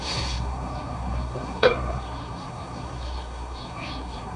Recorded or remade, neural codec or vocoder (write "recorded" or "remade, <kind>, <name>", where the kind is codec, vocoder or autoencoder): remade, codec, SNAC